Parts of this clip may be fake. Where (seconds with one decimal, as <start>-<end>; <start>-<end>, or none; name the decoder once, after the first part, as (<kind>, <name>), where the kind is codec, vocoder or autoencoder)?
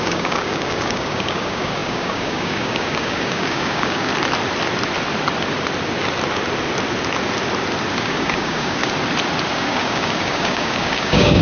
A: 0.0-4.1 (codec, DAC); 7.9-8.8; 9.5-11.4